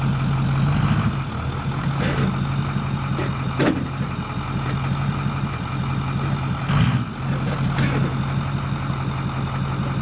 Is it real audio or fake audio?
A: real